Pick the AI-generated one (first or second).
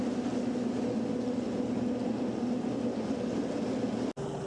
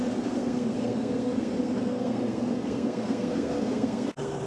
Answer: second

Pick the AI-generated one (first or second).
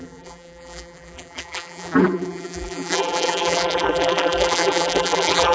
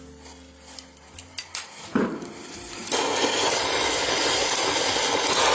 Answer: first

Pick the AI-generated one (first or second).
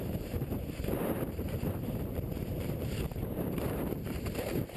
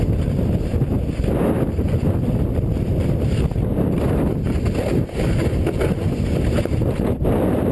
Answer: first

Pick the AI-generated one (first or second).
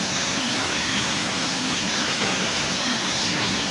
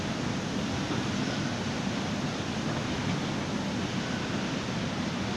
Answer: first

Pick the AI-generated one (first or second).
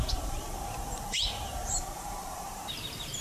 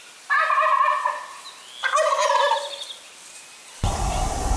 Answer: first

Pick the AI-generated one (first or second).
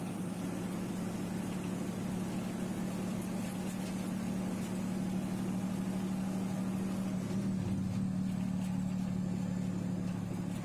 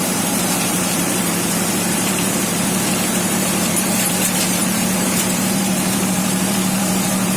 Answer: second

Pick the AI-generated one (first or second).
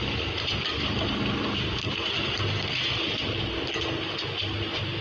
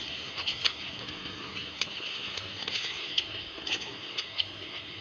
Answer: second